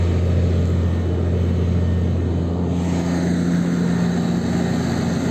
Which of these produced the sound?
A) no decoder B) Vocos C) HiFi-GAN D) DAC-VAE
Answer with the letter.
A